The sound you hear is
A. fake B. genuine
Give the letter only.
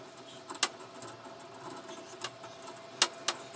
B